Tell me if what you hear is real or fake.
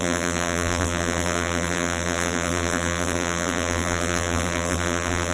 fake